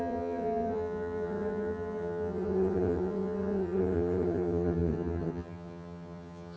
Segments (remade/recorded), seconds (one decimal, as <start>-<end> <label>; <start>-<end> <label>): 0.0-6.6 remade